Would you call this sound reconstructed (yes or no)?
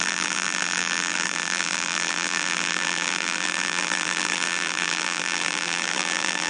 yes